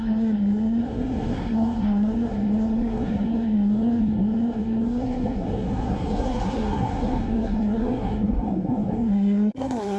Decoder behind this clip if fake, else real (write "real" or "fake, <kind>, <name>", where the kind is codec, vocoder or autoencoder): fake, codec, SNAC